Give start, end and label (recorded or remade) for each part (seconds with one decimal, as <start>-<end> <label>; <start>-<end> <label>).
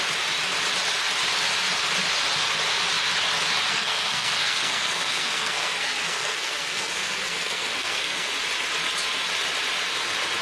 0.0-3.7 recorded; 3.7-8.3 remade; 8.3-10.4 recorded